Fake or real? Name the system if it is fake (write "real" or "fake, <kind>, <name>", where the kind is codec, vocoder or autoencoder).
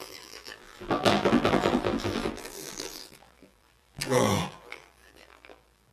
fake, vocoder, BigVGAN v2